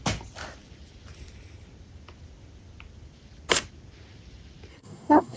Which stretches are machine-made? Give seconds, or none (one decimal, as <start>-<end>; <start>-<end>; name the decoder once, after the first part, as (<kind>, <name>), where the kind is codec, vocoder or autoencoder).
4.7-5.4 (codec, SNAC)